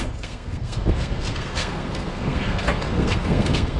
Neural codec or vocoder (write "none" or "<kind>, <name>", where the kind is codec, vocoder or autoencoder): codec, SNAC